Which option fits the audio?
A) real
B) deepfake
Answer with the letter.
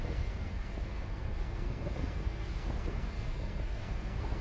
B